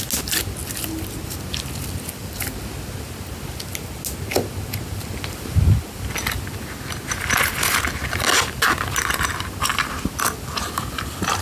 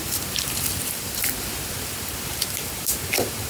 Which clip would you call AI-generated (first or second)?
second